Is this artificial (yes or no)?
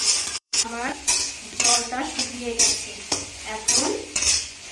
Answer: yes